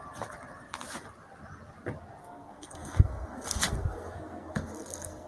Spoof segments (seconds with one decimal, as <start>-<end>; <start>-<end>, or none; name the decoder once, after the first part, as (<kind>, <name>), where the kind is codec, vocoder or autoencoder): 2.2-5.3 (codec, SNAC)